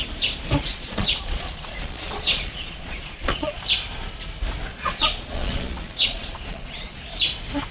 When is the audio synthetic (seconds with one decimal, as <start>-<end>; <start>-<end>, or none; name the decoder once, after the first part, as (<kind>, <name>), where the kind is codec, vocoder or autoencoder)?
0.7-3.6 (vocoder, Vocos); 4.7-7.0